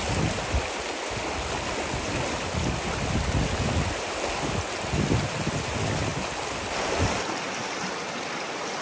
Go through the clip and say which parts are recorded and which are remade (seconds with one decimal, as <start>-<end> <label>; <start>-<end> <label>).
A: 0.0-8.8 recorded